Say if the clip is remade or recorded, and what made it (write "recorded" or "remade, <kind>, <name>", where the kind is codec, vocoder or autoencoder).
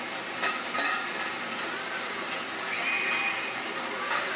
recorded